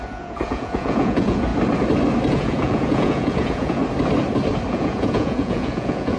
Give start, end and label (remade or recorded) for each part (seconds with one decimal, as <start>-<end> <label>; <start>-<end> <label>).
0.0-1.5 remade; 1.5-2.3 recorded; 2.3-3.8 remade; 3.8-4.7 recorded; 4.7-6.2 remade